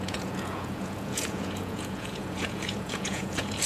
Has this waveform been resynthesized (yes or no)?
yes